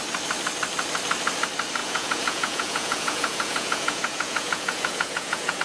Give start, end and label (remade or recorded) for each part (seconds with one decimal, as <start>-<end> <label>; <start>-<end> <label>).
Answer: 0.0-1.8 recorded; 1.8-5.6 remade